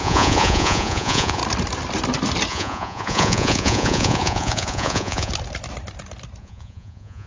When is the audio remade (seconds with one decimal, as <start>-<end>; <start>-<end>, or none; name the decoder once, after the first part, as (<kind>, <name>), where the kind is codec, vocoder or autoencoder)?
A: 0.0-1.4 (vocoder, Vocos); 2.5-5.3; 6.4-7.3